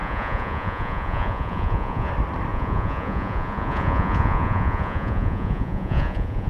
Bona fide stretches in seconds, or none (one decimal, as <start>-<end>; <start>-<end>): 2.1-2.5